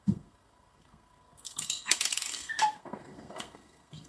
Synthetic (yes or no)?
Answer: yes